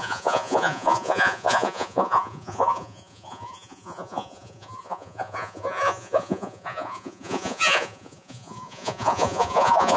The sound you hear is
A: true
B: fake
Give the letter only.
B